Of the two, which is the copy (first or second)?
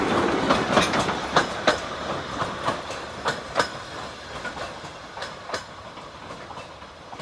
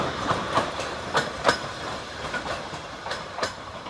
second